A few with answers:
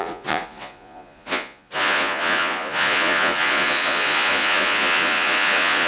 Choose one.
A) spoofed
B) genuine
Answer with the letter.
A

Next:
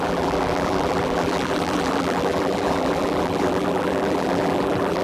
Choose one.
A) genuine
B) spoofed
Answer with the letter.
B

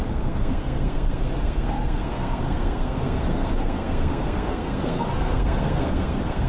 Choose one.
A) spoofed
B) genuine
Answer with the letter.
A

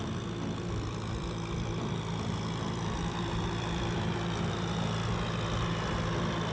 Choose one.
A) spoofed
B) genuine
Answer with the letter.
A